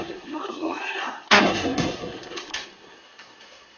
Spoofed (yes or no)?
yes